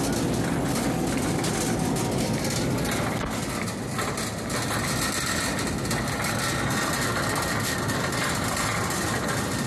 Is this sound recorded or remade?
recorded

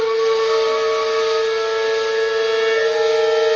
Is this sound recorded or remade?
recorded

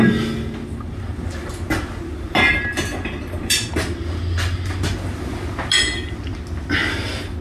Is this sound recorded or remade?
recorded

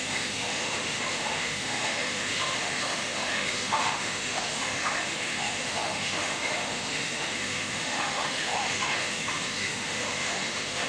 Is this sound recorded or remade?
remade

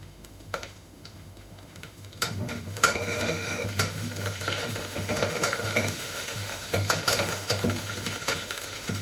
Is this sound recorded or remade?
remade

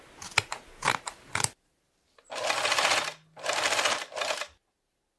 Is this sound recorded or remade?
recorded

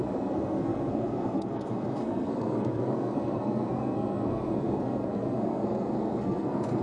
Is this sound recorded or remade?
remade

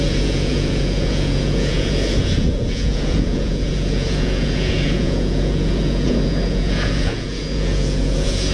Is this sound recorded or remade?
remade